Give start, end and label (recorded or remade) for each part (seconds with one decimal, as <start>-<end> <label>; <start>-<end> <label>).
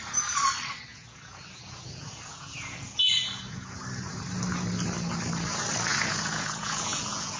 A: 0.0-0.9 recorded; 0.9-3.8 remade; 3.8-5.9 recorded; 5.9-7.4 remade